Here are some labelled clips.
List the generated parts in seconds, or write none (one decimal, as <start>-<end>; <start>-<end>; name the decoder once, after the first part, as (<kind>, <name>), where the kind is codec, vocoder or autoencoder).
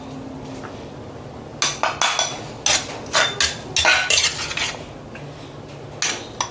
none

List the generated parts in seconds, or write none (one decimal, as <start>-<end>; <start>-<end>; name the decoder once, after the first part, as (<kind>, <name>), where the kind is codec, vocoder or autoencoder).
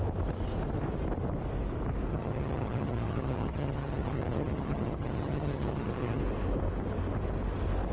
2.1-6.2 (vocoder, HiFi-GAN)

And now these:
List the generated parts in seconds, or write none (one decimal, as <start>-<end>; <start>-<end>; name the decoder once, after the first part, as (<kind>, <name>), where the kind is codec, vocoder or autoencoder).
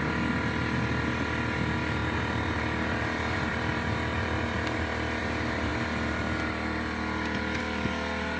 none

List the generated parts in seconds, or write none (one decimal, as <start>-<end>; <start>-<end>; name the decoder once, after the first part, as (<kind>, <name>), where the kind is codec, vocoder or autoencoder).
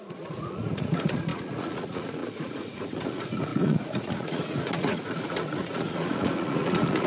0.0-7.1 (vocoder, Vocos)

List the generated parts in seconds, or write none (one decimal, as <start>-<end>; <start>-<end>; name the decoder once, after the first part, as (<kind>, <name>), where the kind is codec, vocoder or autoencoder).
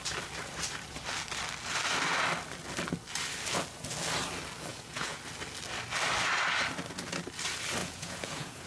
4.7-5.2 (vocoder, Vocos); 7.8-8.7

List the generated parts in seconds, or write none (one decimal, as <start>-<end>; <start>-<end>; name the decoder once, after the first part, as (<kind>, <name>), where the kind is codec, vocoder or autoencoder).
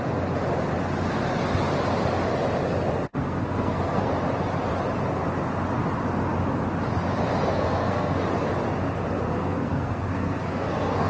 3.1-4.1 (codec, SNAC); 7.5-8.2; 9.3-11.1